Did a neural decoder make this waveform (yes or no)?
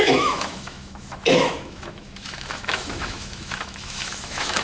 yes